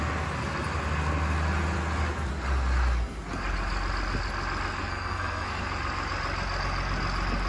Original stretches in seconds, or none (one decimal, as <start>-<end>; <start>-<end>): 0.0-4.8; 5.6-7.5